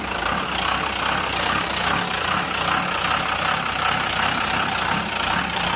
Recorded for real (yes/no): yes